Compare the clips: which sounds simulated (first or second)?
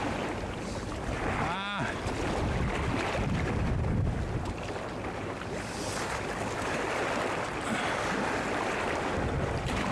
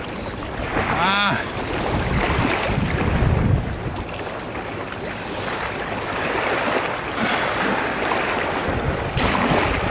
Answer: second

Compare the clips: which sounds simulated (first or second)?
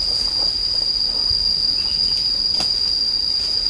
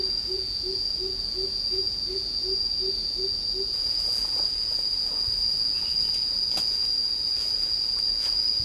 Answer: second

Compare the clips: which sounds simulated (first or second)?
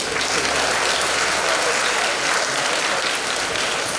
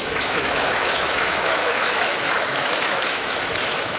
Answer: second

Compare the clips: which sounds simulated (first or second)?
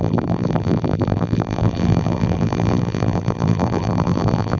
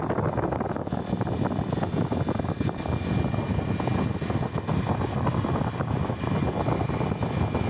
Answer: first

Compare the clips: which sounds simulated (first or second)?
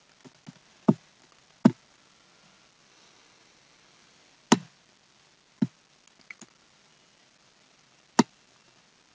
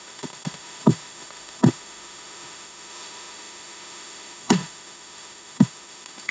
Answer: second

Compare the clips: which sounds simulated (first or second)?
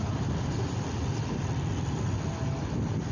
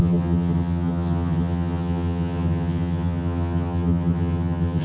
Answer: second